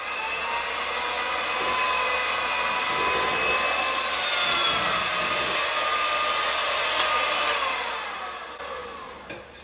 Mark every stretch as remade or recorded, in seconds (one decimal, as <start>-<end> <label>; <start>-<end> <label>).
0.0-9.6 recorded